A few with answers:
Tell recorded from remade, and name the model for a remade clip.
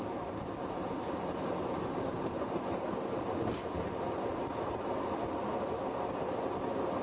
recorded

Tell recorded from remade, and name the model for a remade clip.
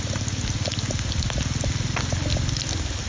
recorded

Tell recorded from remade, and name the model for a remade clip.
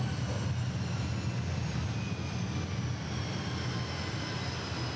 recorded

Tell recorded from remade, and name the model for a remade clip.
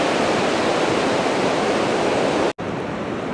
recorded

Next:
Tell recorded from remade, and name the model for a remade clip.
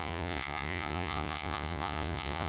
remade, vocoder, Vocos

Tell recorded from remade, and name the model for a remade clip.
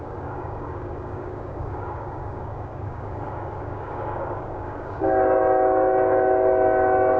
remade, codec, DAC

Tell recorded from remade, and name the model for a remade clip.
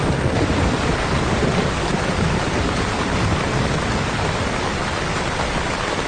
remade, vocoder, BigVGAN v2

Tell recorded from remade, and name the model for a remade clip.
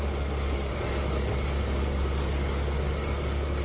remade, codec, DAC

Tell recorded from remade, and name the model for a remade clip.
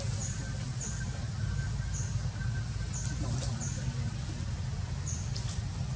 recorded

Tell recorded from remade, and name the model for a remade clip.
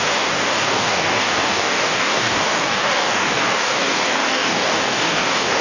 remade, codec, DAC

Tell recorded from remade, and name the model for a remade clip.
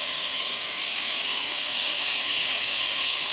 remade, codec, SNAC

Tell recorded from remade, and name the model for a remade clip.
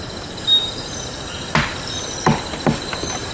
recorded